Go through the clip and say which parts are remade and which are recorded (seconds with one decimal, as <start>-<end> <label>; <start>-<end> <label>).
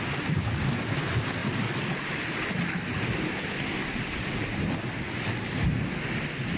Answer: 0.0-6.6 recorded